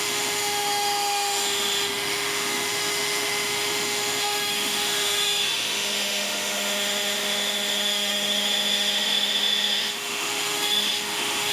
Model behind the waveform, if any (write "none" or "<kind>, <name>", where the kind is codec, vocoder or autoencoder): autoencoder, DAC-VAE